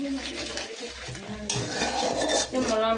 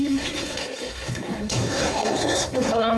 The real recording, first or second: first